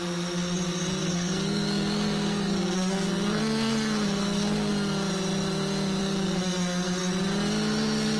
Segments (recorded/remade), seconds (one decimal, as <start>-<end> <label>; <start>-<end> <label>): 0.0-1.0 recorded; 1.0-4.7 remade; 4.7-6.0 recorded; 6.0-7.0 remade; 7.0-8.2 recorded